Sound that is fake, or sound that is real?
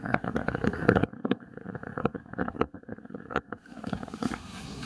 fake